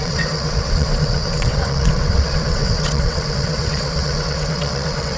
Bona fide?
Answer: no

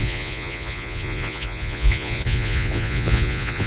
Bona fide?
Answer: no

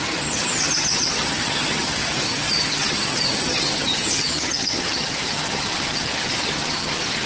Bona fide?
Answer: no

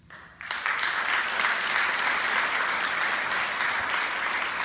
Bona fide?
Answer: yes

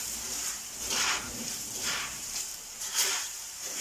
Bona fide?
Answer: no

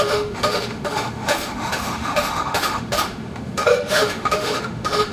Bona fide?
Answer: no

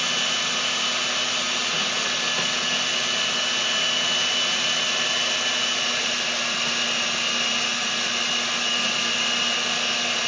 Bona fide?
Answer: yes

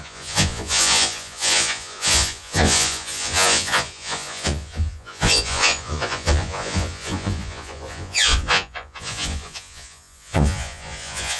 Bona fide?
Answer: no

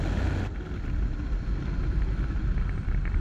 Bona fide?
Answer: yes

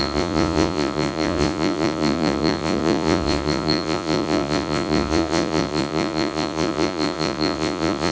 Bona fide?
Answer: no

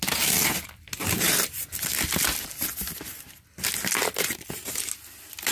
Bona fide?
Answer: yes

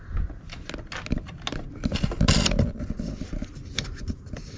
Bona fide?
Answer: yes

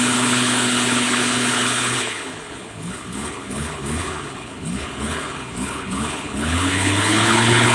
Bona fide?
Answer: no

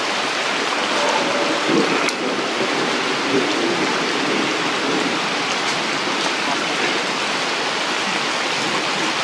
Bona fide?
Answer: yes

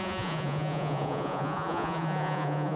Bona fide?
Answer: no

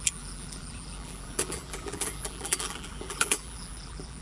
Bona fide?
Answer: no